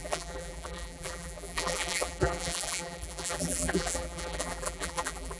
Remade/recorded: remade